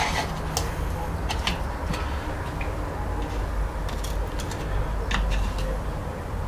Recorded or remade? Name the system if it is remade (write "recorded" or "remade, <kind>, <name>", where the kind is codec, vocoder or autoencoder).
recorded